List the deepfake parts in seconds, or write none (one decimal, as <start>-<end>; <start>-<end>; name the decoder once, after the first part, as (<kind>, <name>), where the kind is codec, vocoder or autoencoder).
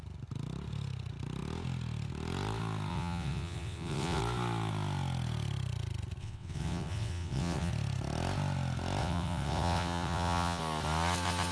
2.9-4.2 (vocoder, WaveNeXt); 6.2-7.7; 9.0-10.6